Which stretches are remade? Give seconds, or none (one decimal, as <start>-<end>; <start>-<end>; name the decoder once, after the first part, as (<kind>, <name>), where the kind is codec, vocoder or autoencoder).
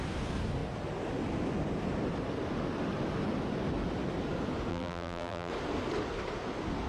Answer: 4.7-5.5 (vocoder, BigVGAN v2)